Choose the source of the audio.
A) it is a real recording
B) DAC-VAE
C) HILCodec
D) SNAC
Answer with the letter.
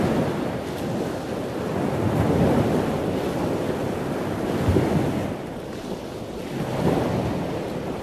A